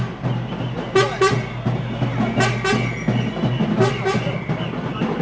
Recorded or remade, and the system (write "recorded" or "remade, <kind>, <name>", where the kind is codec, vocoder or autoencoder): recorded